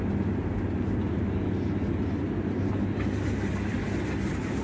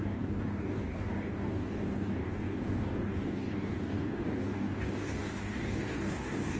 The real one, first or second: first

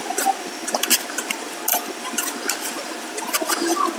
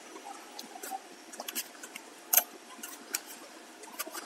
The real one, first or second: first